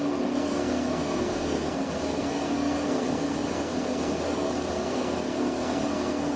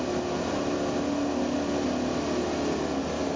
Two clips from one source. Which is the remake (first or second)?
first